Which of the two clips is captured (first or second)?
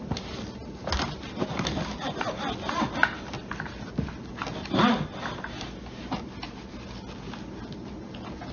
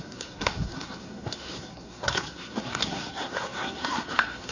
first